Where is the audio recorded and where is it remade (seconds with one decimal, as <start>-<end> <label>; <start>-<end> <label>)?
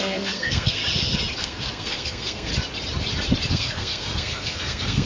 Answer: 0.0-0.8 remade; 0.8-1.4 recorded; 1.4-2.5 remade; 2.5-3.5 recorded; 3.5-5.1 remade